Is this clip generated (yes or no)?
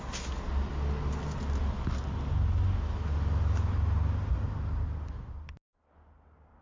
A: no